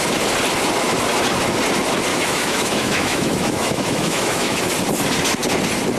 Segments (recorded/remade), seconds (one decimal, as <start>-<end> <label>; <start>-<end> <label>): 0.0-2.1 recorded; 2.1-4.6 remade; 4.6-6.0 recorded